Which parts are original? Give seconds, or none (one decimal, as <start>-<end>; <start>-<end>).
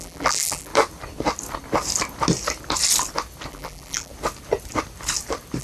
0.7-3.5; 4.1-5.6